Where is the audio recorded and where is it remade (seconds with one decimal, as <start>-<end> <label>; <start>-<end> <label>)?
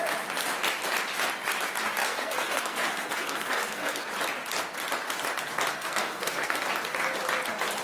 0.0-2.0 recorded; 2.0-4.1 remade; 4.1-5.7 recorded; 5.7-6.7 remade; 6.7-7.8 recorded